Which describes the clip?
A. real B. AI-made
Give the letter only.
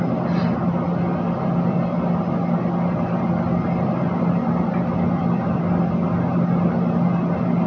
A